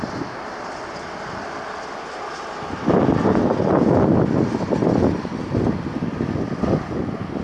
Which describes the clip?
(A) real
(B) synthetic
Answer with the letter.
A